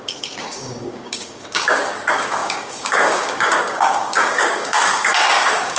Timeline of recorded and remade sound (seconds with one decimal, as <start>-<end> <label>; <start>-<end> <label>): 0.0-5.8 remade